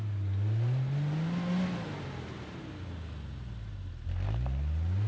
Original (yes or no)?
yes